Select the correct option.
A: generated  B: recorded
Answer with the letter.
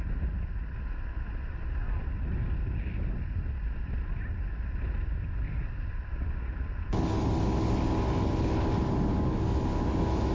B